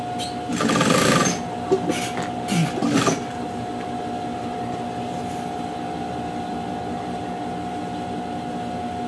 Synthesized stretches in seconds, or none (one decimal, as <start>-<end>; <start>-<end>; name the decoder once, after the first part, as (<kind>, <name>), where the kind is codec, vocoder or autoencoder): none